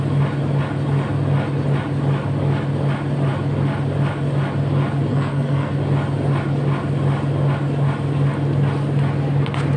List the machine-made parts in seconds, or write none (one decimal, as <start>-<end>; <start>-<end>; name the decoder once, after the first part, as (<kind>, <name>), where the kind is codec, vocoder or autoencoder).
5.1-5.7 (codec, SNAC)